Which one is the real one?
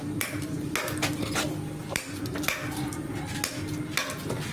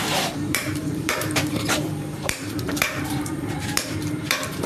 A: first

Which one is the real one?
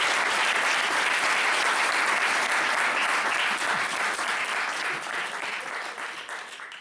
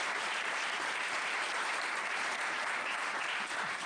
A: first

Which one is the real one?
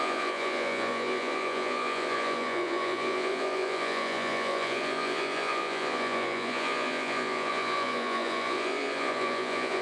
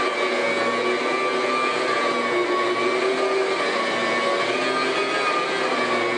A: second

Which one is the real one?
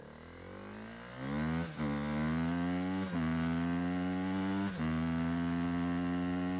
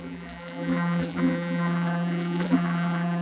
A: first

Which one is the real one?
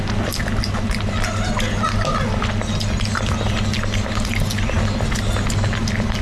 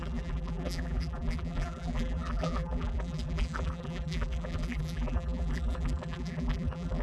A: first